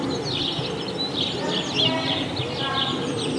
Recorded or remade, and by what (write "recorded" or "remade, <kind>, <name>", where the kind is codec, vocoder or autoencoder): recorded